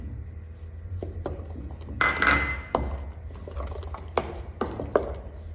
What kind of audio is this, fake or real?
real